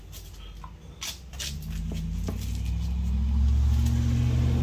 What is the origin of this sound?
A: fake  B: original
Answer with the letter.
B